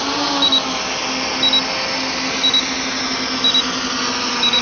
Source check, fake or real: real